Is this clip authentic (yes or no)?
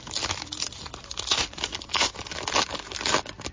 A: yes